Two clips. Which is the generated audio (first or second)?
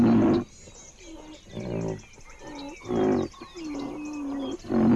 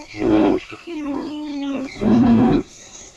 second